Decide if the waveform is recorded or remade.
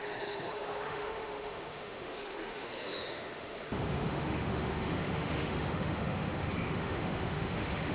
remade